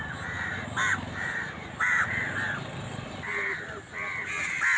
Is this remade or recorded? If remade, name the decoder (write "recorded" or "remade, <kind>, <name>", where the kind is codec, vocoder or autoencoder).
recorded